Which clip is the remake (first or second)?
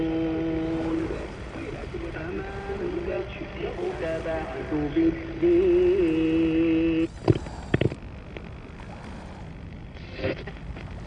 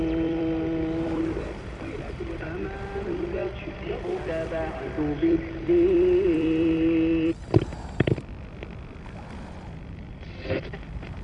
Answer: second